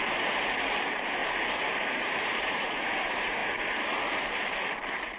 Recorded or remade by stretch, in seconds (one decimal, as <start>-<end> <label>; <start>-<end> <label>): 0.0-1.2 remade; 1.2-1.8 recorded; 1.8-3.4 remade; 3.4-5.2 recorded